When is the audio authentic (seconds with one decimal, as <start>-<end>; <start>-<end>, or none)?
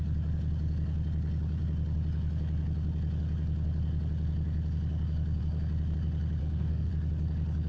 0.0-6.4; 6.9-7.7